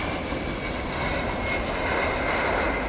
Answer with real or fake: real